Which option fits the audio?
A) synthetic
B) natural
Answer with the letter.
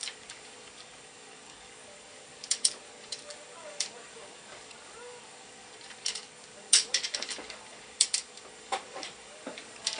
A